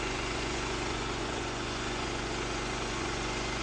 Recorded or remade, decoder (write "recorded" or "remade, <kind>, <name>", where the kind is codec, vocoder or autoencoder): remade, vocoder, Vocos